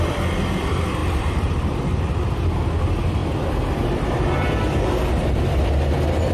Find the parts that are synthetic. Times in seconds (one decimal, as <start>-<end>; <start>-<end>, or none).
1.0-2.7; 3.2-5.7